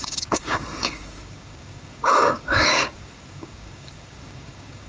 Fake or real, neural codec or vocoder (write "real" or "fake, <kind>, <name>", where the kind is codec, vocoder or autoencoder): fake, codec, DAC